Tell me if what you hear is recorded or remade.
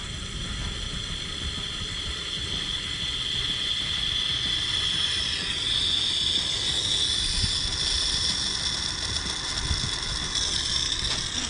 recorded